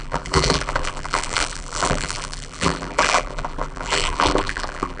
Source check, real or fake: fake